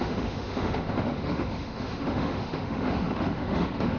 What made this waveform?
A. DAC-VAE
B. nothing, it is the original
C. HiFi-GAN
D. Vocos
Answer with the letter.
A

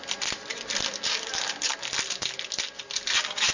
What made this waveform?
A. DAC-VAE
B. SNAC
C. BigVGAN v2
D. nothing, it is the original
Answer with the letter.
D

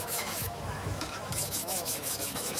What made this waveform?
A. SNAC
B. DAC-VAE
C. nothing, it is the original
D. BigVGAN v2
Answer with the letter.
B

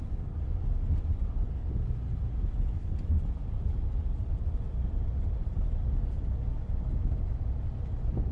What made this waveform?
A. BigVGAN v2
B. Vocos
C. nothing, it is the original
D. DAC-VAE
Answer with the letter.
C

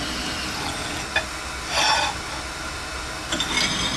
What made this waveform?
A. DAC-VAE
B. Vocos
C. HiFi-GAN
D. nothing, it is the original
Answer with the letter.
D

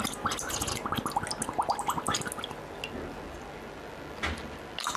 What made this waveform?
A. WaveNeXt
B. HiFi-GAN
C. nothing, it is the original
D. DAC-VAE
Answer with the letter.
C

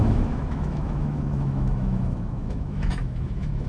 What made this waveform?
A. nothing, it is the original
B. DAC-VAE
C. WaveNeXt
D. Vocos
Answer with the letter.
B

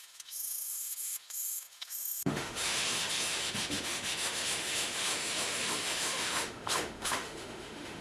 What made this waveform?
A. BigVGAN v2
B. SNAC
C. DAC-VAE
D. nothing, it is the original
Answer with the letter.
C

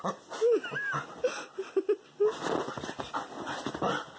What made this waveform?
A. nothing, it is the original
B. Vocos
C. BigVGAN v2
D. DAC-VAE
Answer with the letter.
A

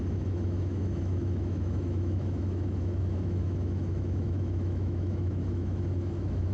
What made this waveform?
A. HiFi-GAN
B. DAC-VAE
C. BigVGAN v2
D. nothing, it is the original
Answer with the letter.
B